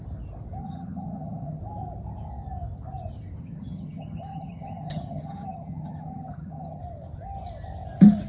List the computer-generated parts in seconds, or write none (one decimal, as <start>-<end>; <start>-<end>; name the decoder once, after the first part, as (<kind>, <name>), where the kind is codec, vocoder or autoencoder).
0.6-1.6 (vocoder, HiFi-GAN); 3.4-6.8